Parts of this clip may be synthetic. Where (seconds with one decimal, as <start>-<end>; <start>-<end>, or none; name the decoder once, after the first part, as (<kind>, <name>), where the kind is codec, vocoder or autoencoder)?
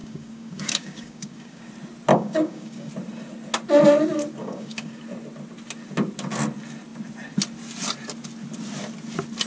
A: 0.0-1.7 (codec, DAC); 2.1-2.9; 4.4-5.0